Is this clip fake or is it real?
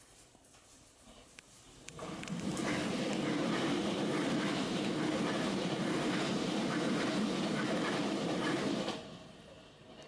fake